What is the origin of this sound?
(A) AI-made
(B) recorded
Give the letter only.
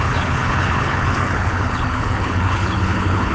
A